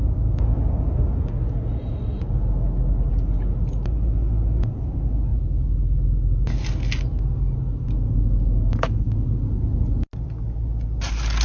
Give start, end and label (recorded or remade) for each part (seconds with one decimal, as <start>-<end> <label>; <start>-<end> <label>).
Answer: 0.0-11.4 recorded